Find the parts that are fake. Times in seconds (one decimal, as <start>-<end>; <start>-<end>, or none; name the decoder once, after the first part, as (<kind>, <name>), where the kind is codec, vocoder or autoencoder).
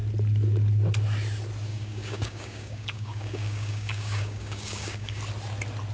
1.7-5.2 (codec, DAC)